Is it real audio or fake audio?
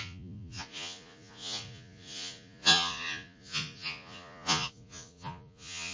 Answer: fake